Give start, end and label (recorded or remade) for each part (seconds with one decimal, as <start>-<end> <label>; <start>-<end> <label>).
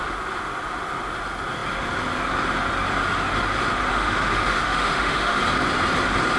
0.0-3.9 recorded; 3.9-5.4 remade; 5.4-6.4 recorded